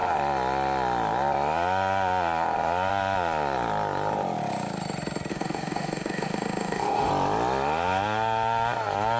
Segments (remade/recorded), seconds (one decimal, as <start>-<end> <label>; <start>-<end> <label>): 0.0-5.3 recorded; 5.3-7.1 remade; 7.1-9.2 recorded